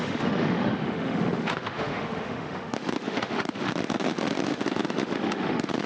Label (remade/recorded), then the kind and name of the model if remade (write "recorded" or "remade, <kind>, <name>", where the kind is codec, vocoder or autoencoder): remade, autoencoder, DAC-VAE